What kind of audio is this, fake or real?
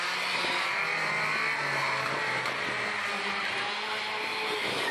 real